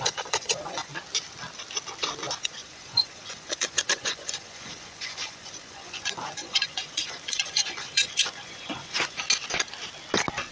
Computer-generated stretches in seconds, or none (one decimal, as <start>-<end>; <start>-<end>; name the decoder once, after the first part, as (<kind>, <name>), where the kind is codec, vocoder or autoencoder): 0.0-0.9 (vocoder, Vocos); 2.4-9.2